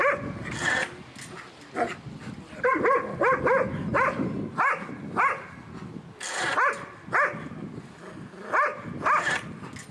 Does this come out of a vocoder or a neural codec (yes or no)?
no